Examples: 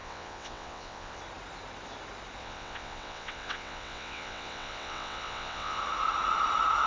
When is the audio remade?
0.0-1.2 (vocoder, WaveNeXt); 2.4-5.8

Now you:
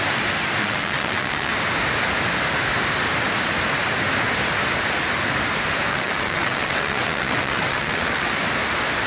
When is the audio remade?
0.6-1.5 (vocoder, WaveNeXt); 5.9-8.3

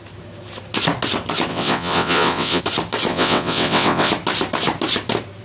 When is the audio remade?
1.5-2.6 (vocoder, WaveNeXt); 3.1-4.1